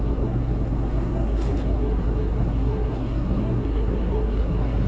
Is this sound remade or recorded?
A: remade